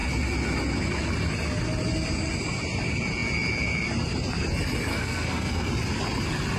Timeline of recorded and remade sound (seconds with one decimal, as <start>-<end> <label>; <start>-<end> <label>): 0.0-4.9 recorded; 4.9-5.7 remade; 5.7-6.6 recorded